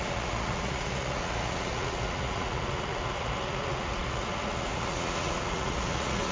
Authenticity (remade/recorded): remade